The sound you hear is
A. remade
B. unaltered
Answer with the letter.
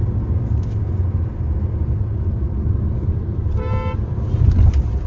B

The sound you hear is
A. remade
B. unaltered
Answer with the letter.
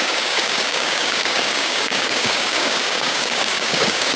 A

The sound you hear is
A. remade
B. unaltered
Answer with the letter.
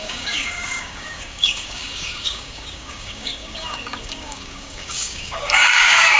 A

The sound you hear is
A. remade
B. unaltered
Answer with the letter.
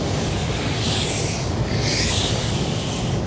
A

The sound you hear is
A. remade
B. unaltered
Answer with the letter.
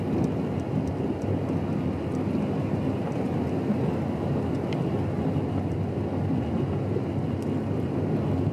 B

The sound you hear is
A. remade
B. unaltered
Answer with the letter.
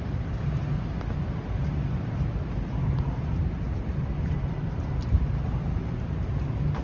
B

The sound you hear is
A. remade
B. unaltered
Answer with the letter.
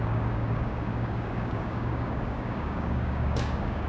A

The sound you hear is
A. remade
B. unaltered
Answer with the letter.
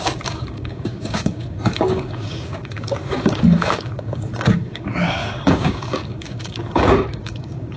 A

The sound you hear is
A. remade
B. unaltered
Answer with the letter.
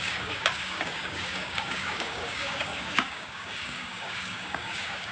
A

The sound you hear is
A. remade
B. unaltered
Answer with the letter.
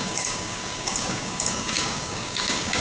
A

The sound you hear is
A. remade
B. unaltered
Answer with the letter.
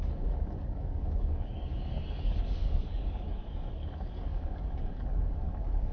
A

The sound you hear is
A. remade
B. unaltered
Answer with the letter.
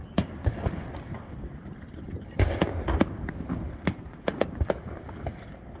B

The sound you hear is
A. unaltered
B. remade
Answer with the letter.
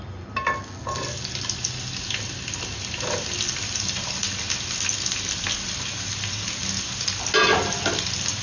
A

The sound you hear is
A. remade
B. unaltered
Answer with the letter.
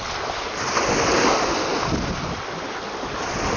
B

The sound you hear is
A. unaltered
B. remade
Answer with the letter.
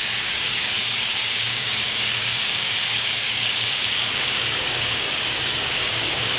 B